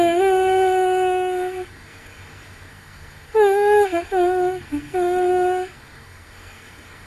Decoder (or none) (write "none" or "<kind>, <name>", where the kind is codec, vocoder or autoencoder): codec, SNAC